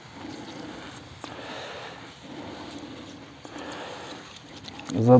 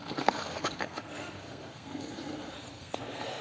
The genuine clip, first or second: first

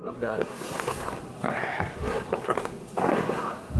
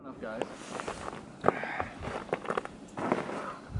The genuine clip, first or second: second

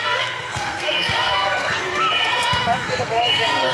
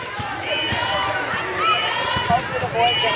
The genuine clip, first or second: second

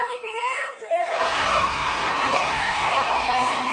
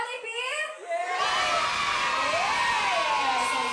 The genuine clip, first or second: second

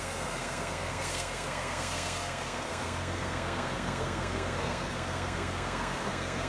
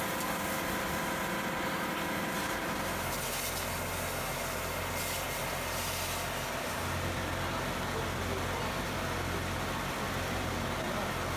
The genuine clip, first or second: second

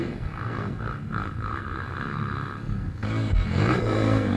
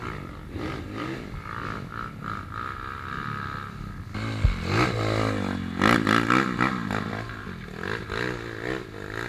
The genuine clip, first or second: second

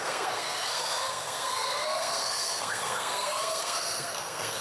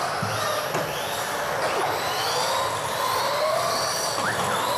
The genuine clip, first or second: second